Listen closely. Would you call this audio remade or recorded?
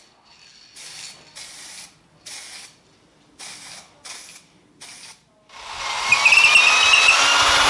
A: recorded